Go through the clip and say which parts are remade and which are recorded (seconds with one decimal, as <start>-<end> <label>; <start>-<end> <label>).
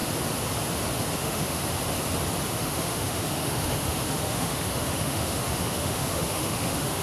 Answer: 0.0-1.1 recorded; 1.1-1.6 remade; 1.6-2.6 recorded; 2.6-7.0 remade